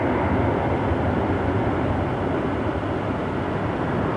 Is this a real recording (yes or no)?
yes